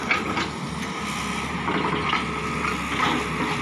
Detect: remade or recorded recorded